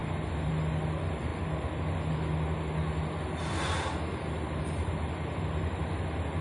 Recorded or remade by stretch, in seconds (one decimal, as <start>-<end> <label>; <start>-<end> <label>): 0.0-6.4 recorded